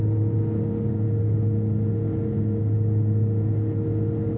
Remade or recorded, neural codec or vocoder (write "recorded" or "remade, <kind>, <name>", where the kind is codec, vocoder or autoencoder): recorded